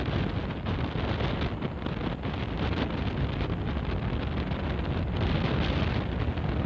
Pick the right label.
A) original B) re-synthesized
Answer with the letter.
A